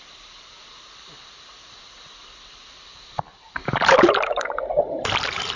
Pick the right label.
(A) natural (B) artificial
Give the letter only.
B